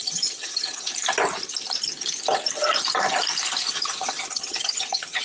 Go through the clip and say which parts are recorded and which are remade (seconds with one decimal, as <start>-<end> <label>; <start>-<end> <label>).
0.0-0.9 remade; 0.9-3.7 recorded; 3.7-5.2 remade